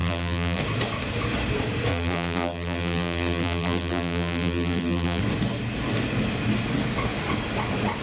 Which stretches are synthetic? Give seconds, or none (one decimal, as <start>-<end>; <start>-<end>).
0.0-0.6; 1.9-5.2